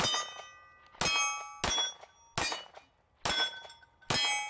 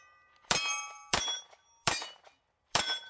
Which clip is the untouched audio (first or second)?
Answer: first